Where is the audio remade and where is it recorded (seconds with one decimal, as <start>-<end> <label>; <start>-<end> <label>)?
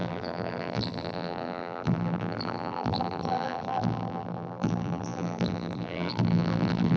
0.0-7.0 remade